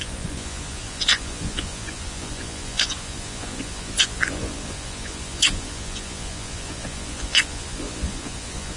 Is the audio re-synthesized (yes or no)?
yes